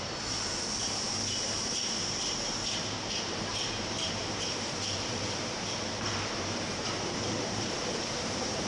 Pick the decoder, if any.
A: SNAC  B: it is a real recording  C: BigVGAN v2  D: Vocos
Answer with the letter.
C